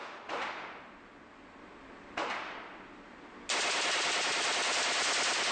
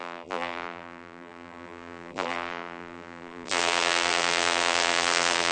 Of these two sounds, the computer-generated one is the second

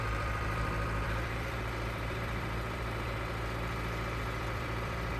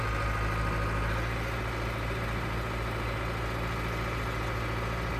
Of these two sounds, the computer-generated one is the first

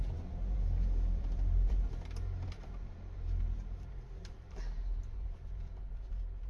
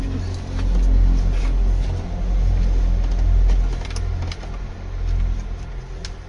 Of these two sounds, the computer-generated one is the first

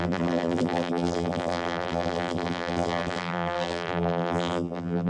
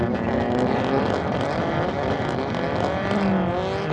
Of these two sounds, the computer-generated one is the first